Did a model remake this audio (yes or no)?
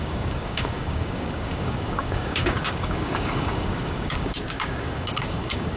yes